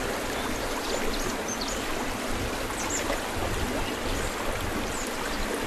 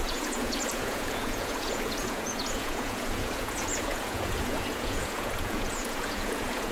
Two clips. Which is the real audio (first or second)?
first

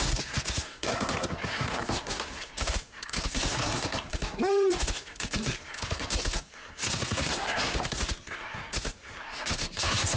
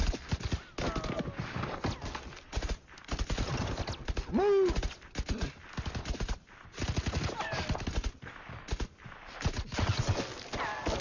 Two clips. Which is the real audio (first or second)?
second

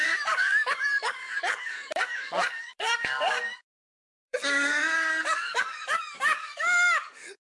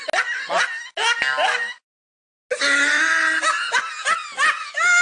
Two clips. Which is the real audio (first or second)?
second